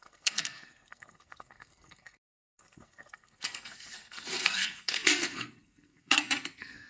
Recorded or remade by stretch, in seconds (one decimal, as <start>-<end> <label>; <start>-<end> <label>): 0.0-6.9 remade